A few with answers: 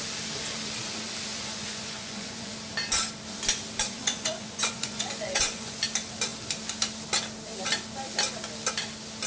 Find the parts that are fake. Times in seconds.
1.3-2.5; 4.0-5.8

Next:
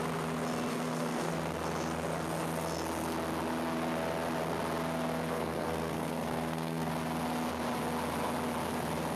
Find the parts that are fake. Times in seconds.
0.7-1.3; 5.3-6.9

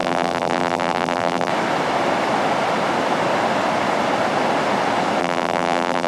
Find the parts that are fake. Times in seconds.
0.0-1.5; 5.2-6.1